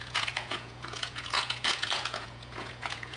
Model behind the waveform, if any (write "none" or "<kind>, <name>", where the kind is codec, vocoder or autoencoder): vocoder, Vocos